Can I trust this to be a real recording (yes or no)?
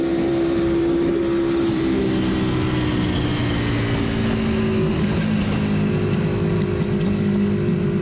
yes